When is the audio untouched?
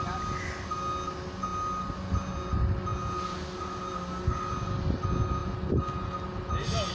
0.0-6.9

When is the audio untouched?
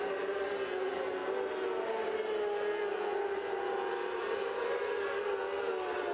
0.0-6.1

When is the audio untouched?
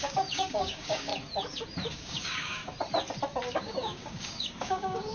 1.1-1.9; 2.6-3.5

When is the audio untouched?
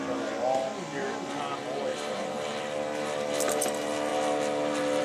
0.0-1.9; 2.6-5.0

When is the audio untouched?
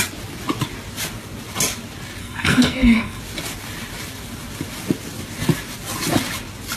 0.0-2.2; 3.2-6.8